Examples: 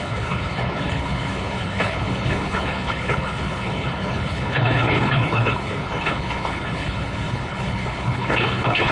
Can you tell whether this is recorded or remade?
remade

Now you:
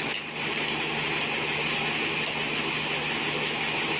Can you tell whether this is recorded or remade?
recorded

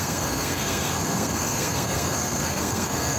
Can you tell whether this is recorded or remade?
remade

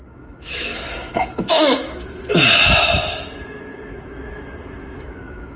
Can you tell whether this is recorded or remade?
remade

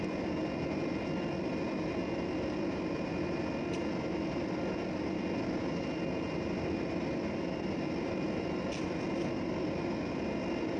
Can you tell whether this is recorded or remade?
recorded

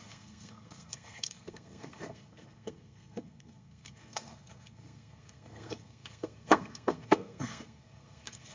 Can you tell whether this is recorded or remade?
remade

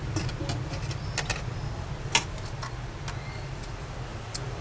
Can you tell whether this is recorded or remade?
recorded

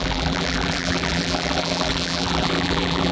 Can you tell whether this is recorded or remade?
remade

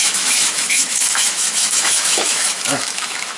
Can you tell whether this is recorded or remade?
remade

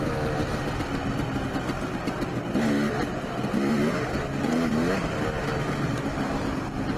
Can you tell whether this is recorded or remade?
recorded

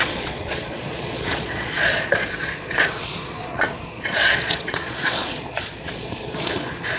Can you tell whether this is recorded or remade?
remade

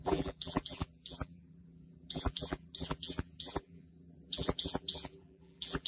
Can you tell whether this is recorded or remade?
remade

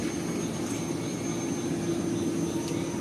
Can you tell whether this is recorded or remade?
recorded